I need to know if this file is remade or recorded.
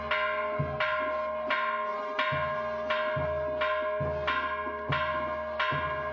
recorded